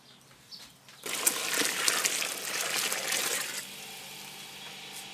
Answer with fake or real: real